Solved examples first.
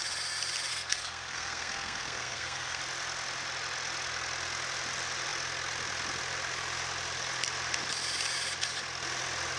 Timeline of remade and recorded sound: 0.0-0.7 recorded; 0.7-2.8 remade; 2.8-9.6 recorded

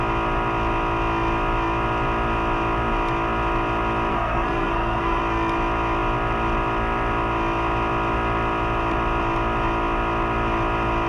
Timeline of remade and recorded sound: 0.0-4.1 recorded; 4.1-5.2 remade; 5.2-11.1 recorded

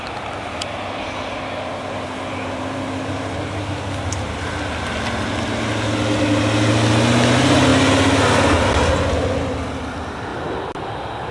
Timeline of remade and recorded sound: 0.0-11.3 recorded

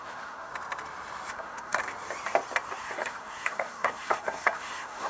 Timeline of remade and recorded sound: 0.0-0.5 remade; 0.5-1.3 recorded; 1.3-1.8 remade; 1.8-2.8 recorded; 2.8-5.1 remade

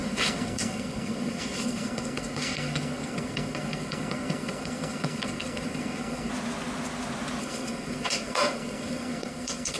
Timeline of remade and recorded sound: 0.0-6.3 remade; 6.3-7.4 recorded; 7.4-9.8 remade

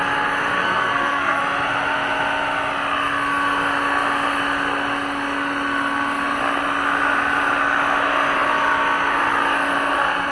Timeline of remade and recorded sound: 0.0-0.6 recorded; 0.6-1.4 remade; 1.4-10.3 recorded